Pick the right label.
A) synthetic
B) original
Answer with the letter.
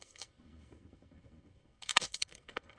A